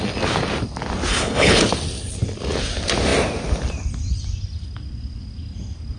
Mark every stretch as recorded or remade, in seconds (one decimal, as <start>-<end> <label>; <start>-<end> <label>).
0.0-1.1 recorded; 1.1-1.6 remade; 1.6-6.0 recorded